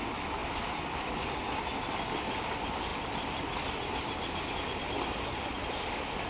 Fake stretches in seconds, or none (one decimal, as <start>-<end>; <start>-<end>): none